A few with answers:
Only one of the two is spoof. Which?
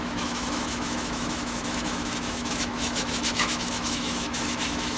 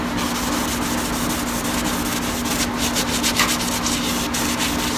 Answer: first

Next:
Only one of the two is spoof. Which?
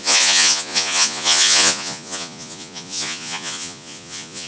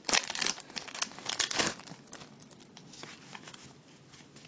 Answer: first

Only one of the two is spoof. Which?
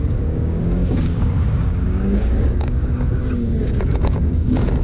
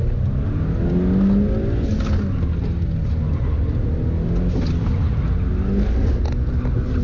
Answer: first